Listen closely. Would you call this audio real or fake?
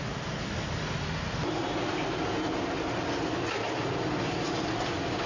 real